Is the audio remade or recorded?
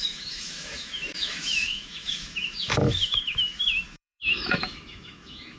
remade